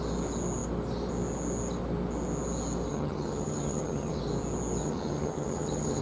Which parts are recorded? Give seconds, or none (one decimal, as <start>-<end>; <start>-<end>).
0.0-2.9; 4.2-4.8